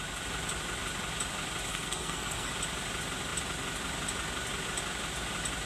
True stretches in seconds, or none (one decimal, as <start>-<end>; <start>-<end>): 0.0-1.7; 2.5-5.7